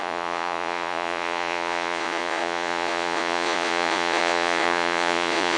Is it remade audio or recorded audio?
remade